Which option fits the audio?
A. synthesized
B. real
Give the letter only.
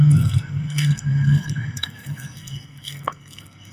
A